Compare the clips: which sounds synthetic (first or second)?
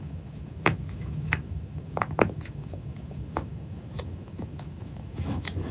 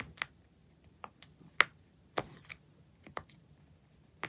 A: first